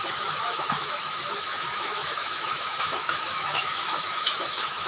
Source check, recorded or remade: remade